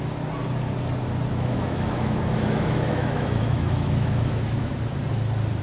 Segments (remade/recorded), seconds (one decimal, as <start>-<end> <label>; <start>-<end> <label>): 0.0-1.3 recorded; 1.3-4.7 remade; 4.7-5.6 recorded